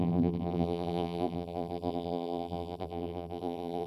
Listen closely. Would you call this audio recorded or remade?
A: remade